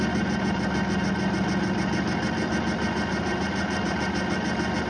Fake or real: real